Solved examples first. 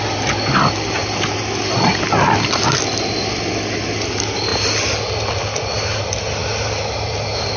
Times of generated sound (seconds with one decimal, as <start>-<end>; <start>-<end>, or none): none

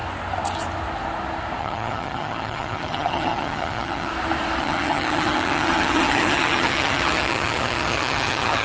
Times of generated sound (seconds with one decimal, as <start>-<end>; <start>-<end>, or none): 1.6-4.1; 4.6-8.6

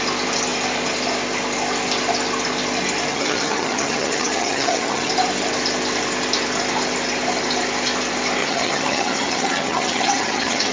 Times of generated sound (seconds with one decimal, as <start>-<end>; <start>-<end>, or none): 3.1-5.1; 8.4-10.7

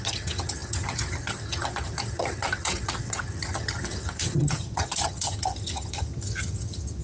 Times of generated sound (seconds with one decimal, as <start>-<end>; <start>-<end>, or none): 0.0-7.0